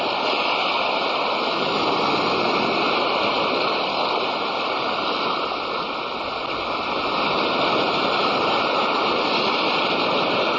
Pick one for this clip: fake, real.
real